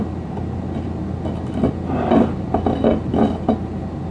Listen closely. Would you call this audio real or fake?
real